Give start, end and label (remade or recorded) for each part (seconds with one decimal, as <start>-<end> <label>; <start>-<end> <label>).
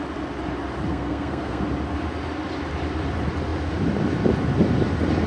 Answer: 0.0-0.9 recorded; 0.9-1.6 remade; 1.6-5.3 recorded